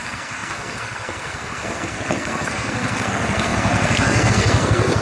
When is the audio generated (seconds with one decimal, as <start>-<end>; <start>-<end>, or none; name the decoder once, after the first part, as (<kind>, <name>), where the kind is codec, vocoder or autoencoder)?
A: 0.0-5.0 (codec, SNAC)